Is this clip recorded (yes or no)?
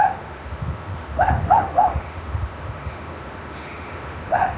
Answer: no